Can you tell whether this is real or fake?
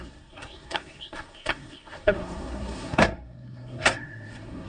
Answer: fake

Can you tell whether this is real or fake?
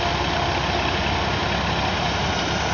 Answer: real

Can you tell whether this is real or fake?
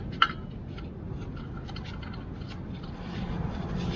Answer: real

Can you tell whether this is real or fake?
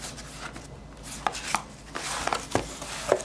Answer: real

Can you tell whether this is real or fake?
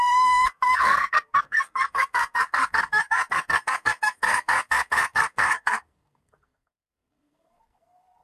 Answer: fake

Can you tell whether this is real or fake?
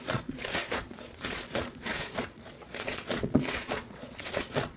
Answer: fake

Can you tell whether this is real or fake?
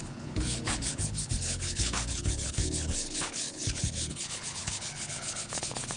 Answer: fake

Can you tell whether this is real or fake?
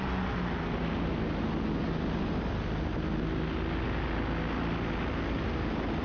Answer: real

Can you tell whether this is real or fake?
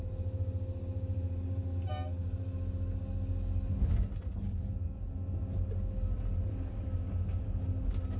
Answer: real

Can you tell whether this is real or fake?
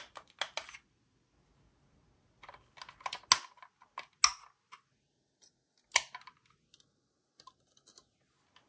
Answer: real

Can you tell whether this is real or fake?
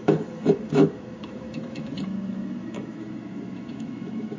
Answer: fake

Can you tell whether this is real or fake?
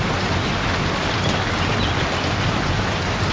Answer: real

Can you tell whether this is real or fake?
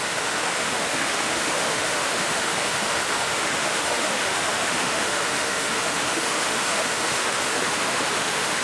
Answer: fake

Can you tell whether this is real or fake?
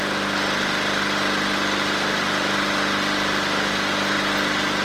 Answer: real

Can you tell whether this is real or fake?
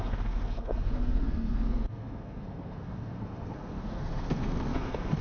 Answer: fake